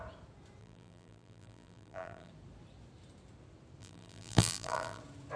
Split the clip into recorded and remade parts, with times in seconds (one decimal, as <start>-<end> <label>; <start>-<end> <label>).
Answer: 0.0-0.6 recorded; 0.6-2.3 remade; 2.3-3.8 recorded; 3.8-5.0 remade; 5.0-5.4 recorded